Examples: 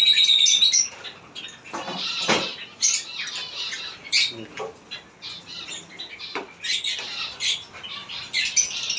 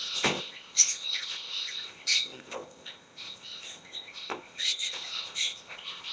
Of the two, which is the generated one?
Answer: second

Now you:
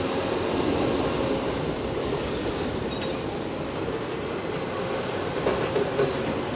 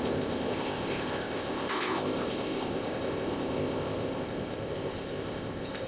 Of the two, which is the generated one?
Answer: second